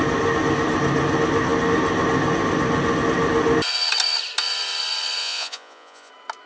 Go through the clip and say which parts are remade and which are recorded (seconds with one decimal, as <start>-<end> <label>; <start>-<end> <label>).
0.0-5.2 recorded; 5.2-6.1 remade; 6.1-6.5 recorded